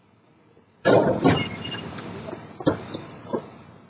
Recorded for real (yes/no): no